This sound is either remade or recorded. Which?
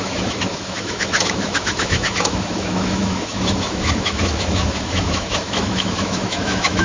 remade